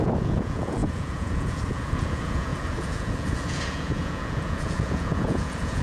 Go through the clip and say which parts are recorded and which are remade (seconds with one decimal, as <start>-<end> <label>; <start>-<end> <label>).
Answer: 0.0-5.8 remade